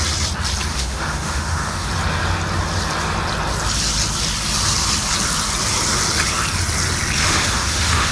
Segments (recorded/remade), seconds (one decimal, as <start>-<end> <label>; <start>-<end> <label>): 0.0-0.7 recorded; 0.7-1.9 remade; 1.9-7.2 recorded; 7.2-8.1 remade